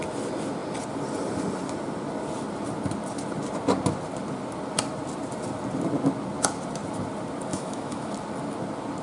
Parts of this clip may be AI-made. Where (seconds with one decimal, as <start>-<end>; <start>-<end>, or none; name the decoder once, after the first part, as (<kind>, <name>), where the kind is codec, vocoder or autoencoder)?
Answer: 7.5-8.1 (autoencoder, DAC-VAE)